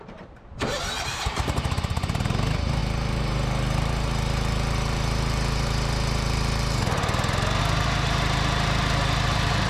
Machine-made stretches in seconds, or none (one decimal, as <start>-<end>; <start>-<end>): 0.0-9.7

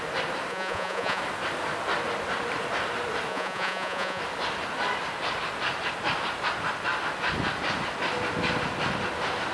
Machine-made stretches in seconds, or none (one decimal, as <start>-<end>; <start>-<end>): 0.5-1.2; 3.3-4.2

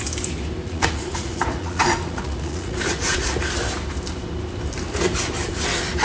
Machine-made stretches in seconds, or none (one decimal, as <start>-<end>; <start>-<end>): 0.6-3.3

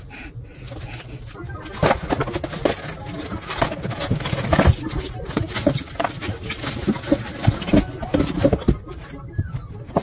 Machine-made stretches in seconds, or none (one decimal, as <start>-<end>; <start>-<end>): none

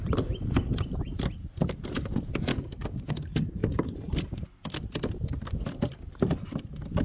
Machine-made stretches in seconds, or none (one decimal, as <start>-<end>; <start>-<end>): 2.5-3.1